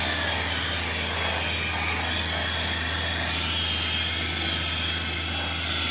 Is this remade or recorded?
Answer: recorded